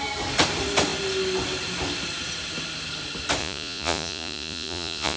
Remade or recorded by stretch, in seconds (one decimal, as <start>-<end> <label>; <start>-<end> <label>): 0.0-3.4 recorded; 3.4-5.2 remade